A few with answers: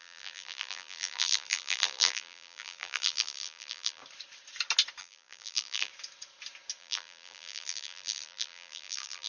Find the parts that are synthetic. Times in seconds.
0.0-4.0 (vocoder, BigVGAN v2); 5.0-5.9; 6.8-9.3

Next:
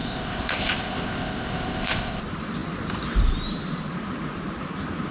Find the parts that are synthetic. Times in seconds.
0.0-2.2 (codec, ZipCodec)

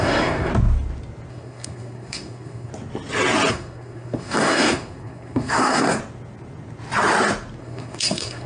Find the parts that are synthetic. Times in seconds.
0.0-0.5 (codec, SNAC); 1.3-2.7; 3.5-6.0; 7.6-8.5

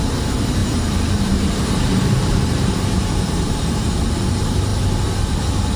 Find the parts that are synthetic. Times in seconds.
0.6-4.1 (vocoder, BigVGAN v2)

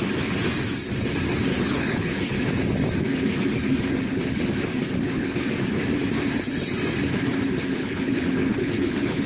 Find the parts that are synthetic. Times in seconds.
1.5-2.5 (codec, HILCodec); 7.7-9.3